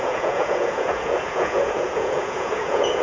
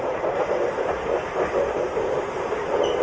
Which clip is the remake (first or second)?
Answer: first